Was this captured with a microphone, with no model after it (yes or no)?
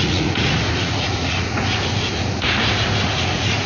no